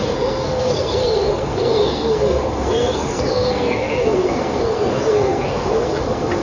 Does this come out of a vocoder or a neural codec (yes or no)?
yes